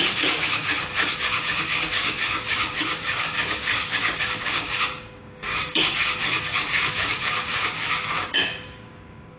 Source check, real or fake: fake